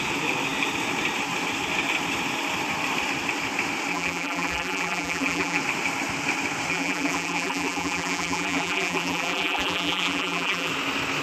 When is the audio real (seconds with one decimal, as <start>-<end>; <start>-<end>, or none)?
0.0-3.9; 5.6-6.7; 10.7-11.2